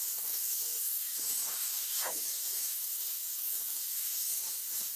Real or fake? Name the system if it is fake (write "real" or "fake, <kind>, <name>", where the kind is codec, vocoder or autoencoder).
fake, codec, DAC